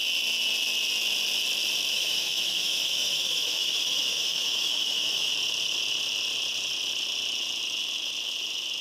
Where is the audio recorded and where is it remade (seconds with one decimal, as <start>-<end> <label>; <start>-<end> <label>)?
0.0-1.9 recorded; 1.9-5.3 remade; 5.3-8.8 recorded